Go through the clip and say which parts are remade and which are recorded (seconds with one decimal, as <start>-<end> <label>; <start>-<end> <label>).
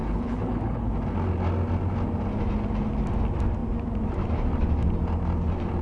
0.0-0.9 remade; 0.9-5.8 recorded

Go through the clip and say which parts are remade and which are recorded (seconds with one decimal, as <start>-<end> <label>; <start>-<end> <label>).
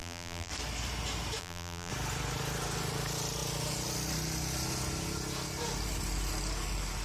0.0-0.5 remade; 0.5-1.4 recorded; 1.4-1.9 remade; 1.9-7.0 recorded